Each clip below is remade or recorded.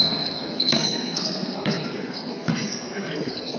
remade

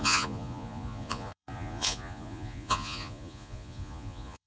remade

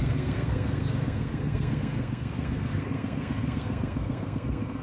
remade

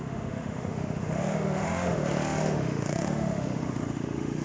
remade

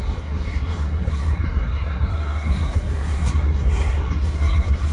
remade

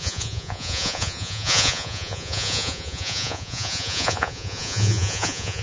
remade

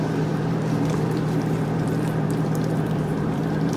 remade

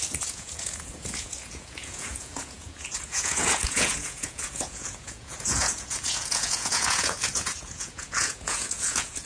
remade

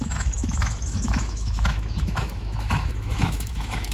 remade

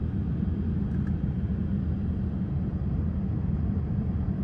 recorded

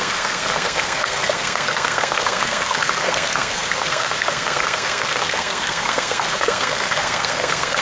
remade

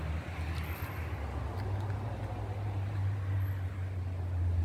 recorded